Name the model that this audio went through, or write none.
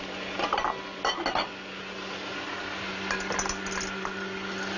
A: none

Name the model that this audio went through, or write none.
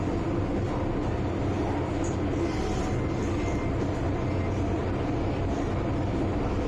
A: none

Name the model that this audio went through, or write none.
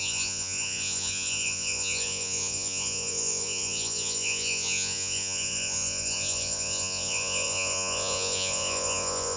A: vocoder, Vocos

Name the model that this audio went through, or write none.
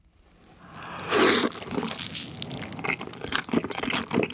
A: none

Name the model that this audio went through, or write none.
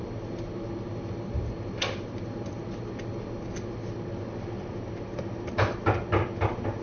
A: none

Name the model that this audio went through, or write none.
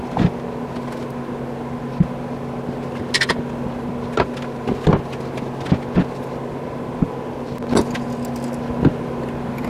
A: none